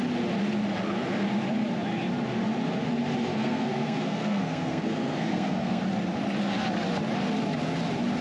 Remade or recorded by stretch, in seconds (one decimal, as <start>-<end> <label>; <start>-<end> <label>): 0.0-3.3 recorded; 3.3-5.8 remade; 5.8-8.2 recorded